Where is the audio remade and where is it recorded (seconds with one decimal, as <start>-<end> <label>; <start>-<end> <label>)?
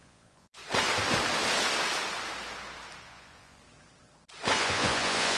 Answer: 0.0-0.6 remade; 0.6-3.0 recorded; 3.0-3.6 remade; 3.6-4.6 recorded; 4.6-5.4 remade